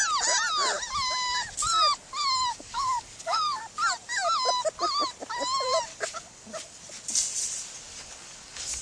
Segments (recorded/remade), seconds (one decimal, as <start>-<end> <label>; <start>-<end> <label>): 0.0-2.5 recorded; 2.5-3.6 remade; 3.6-5.9 recorded; 5.9-6.8 remade; 6.8-7.9 recorded; 7.9-8.8 remade